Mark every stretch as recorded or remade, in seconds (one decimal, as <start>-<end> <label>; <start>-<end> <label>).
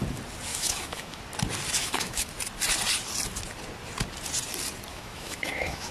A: 0.0-0.5 recorded; 0.5-1.2 remade; 1.2-1.8 recorded; 1.8-2.3 remade; 2.3-4.9 recorded; 4.9-5.9 remade